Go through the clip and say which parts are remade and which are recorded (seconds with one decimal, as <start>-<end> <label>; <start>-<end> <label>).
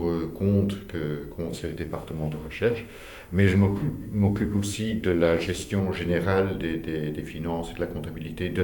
0.0-1.5 recorded; 1.5-5.8 remade; 5.8-8.6 recorded